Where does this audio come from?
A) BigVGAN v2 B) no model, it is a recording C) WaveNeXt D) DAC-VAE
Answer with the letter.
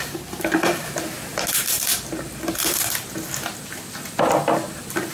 B